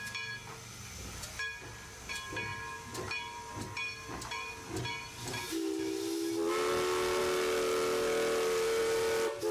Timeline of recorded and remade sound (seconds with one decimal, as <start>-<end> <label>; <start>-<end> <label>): 0.0-9.5 recorded